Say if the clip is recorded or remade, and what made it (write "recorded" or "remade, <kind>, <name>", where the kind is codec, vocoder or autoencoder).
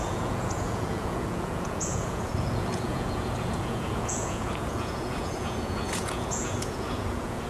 remade, vocoder, Vocos